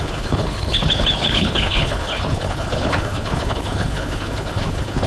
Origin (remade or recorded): remade